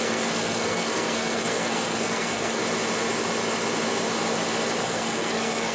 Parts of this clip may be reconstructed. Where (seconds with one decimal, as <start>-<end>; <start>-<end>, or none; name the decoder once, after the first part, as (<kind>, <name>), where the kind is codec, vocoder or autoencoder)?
0.0-2.6 (codec, SNAC); 4.8-5.7